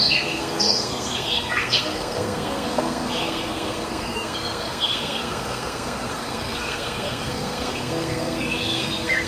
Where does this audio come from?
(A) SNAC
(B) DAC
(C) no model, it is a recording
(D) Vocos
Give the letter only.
A